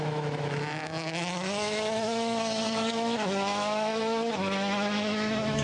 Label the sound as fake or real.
fake